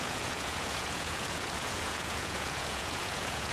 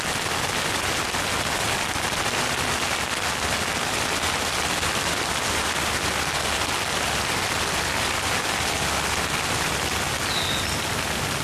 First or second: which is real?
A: second